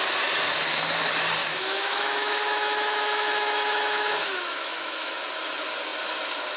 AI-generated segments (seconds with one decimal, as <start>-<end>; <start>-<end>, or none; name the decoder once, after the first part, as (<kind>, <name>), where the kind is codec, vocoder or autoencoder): 1.4-5.1 (autoencoder, DAC-VAE)